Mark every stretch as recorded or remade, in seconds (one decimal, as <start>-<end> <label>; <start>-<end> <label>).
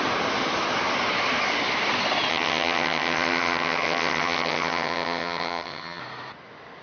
0.0-2.3 recorded; 2.3-6.0 remade; 6.0-6.8 recorded